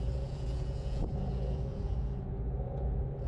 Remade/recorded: remade